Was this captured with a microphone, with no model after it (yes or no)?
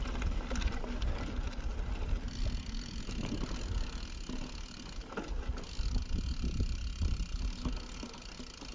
yes